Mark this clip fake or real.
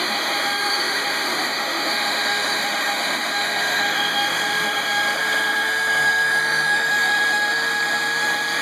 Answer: fake